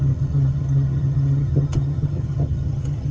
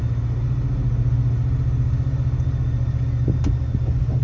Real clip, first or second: second